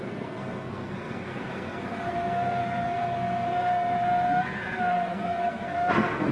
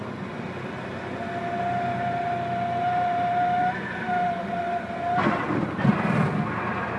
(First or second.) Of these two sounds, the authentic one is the second